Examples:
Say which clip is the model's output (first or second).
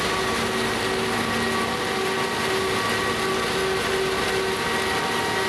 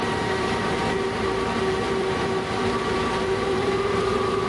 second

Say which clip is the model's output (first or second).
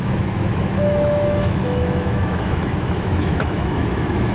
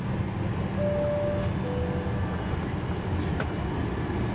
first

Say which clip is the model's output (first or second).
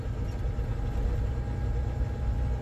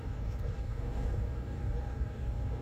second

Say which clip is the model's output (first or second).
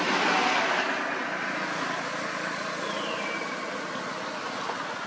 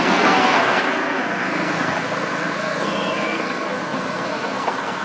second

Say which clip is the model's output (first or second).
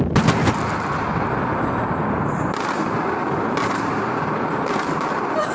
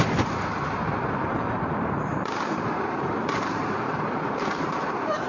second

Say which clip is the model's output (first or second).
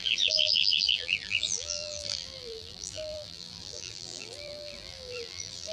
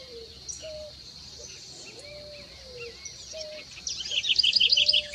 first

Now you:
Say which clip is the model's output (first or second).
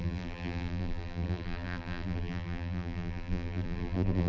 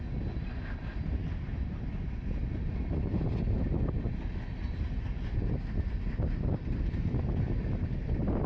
first